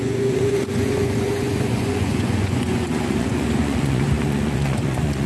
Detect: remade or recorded remade